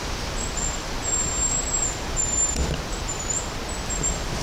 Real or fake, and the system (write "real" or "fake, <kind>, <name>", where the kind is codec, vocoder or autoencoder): real